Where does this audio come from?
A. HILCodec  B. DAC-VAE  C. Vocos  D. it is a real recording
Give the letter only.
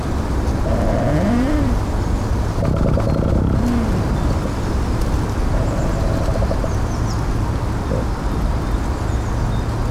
D